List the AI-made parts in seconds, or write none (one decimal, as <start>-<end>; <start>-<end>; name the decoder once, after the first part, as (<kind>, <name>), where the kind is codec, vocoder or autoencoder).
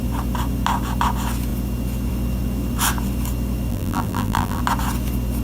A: 3.7-4.6 (vocoder, BigVGAN v2)